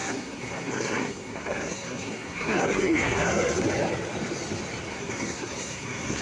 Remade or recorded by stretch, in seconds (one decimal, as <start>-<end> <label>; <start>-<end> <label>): 0.0-3.7 remade; 3.7-4.9 recorded; 4.9-6.2 remade